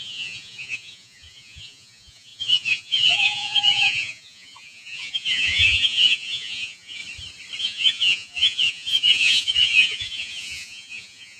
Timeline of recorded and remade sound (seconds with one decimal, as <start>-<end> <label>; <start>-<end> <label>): 0.0-7.0 remade; 7.0-7.6 recorded; 7.6-11.4 remade